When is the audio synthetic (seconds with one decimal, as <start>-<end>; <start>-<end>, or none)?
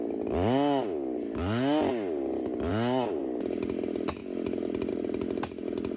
none